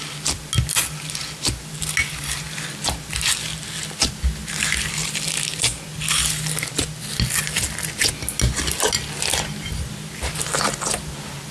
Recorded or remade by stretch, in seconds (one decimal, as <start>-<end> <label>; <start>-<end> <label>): 0.0-11.5 recorded